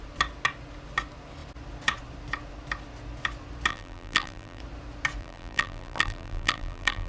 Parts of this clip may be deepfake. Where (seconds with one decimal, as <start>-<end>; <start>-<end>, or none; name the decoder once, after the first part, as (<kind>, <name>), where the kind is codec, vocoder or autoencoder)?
3.7-4.6 (vocoder, BigVGAN v2); 5.2-7.1